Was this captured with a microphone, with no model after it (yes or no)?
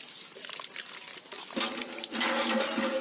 yes